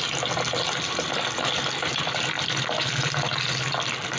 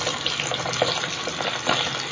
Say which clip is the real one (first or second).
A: second